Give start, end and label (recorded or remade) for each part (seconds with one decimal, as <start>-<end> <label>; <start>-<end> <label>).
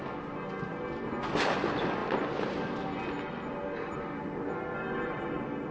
0.0-5.7 recorded